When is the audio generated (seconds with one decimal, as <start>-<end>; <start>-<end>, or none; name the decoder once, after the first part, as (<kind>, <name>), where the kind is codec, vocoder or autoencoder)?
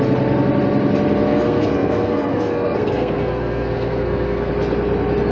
1.3-4.5 (codec, SNAC)